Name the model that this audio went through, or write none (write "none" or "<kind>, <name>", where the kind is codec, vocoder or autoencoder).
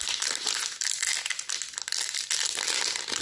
none